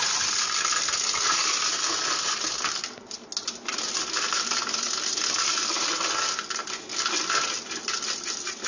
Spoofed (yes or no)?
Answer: no